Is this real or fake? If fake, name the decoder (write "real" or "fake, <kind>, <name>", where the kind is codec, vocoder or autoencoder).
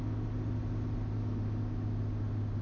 real